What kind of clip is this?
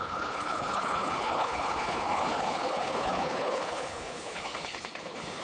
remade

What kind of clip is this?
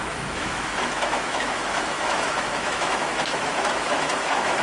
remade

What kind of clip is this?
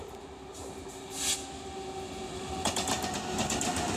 recorded